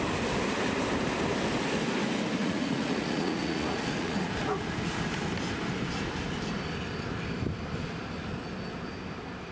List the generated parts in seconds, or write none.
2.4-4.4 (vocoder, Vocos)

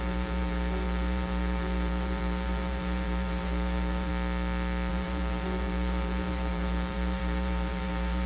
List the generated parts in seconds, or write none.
0.0-4.1 (vocoder, BigVGAN v2); 4.9-8.3

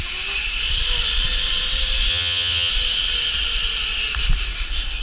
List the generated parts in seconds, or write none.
2.1-2.7 (vocoder, HiFi-GAN)

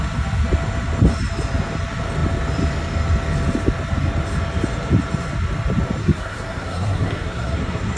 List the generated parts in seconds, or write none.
6.0-8.0 (codec, SNAC)

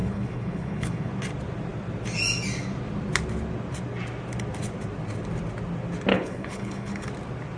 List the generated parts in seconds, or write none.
0.0-1.1 (codec, HILCodec); 6.1-7.1

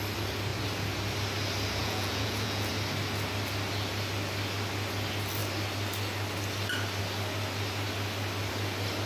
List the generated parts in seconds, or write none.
1.8-2.7 (vocoder, Vocos)